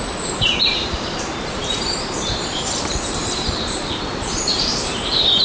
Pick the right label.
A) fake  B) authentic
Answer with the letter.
A